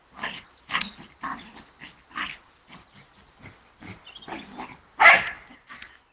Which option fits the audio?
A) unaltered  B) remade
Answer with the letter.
A